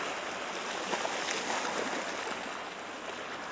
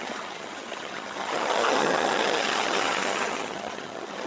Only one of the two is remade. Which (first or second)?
second